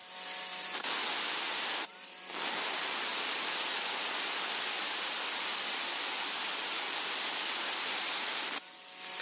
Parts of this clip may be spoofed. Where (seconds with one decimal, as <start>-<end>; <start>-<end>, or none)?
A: none